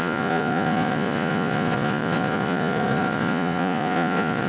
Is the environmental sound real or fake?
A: fake